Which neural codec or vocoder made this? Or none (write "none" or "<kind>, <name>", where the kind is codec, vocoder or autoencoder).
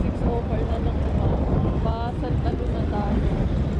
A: none